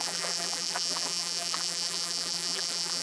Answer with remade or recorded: remade